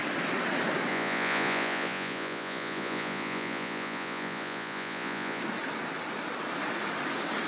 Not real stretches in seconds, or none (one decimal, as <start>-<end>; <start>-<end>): 0.9-5.4